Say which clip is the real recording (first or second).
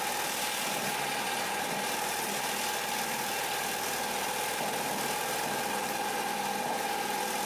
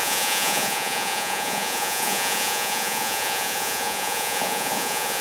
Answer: first